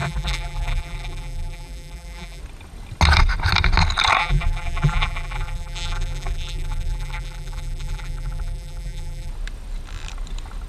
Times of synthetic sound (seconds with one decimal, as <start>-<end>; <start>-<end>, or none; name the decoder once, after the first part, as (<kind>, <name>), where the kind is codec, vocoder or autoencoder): 0.0-2.4 (vocoder, BigVGAN v2); 4.2-9.3